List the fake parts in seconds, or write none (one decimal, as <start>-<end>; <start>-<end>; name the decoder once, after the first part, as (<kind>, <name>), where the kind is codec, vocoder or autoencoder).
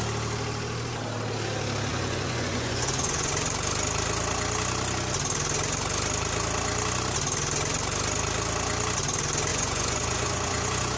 1.9-3.3 (vocoder, Vocos); 9.5-11.0